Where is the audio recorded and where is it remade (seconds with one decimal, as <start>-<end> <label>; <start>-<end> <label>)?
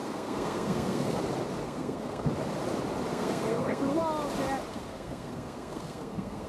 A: 0.0-1.2 remade; 1.2-1.6 recorded; 1.6-2.3 remade; 2.3-3.1 recorded; 3.1-4.0 remade; 4.0-4.7 recorded; 4.7-6.5 remade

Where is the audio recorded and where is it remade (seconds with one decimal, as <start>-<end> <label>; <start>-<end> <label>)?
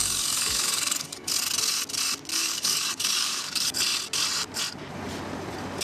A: 0.0-1.3 remade; 1.3-2.3 recorded; 2.3-3.8 remade; 3.8-5.8 recorded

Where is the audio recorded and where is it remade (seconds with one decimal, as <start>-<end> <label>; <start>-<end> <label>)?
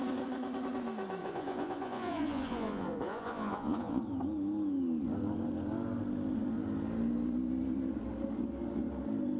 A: 0.0-1.2 recorded; 1.2-4.0 remade; 4.0-9.4 recorded